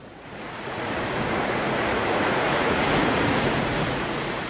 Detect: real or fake fake